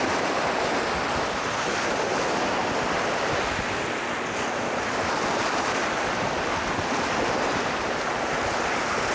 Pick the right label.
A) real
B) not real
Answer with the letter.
A